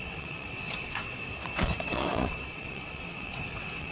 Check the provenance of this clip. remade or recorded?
remade